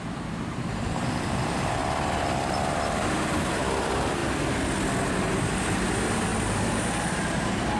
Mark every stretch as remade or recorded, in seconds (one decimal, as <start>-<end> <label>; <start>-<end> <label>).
0.0-1.8 remade; 1.8-3.1 recorded; 3.1-4.2 remade; 4.2-5.1 recorded; 5.1-7.8 remade